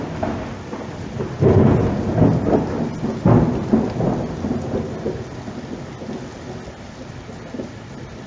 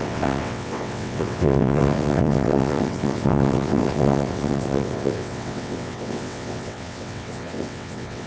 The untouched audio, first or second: first